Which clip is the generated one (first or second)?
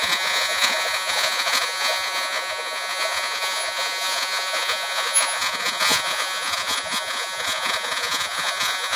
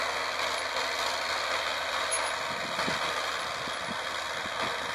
first